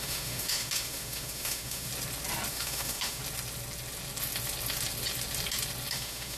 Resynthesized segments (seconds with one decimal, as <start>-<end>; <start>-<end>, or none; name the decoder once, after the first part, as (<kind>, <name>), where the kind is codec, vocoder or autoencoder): 0.0-1.9 (autoencoder, DAC-VAE); 2.5-3.2; 5.9-6.4